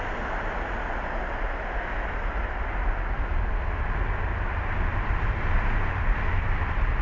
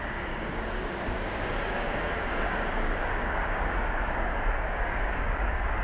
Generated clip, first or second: second